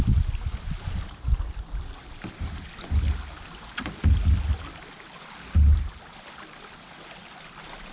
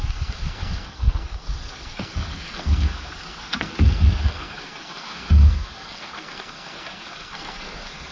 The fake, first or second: second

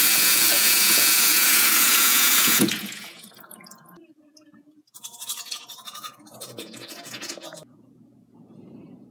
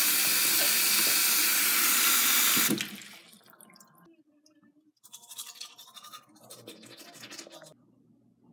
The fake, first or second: first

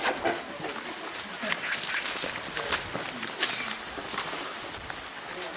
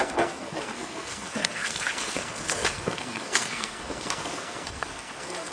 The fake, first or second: second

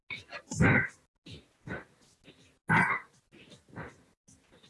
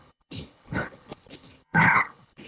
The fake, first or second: second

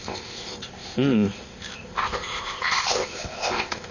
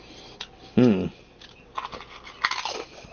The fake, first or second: first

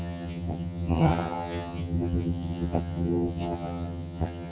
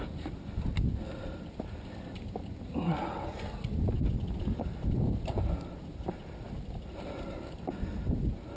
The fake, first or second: first